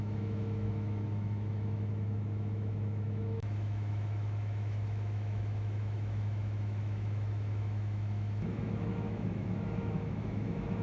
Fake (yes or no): yes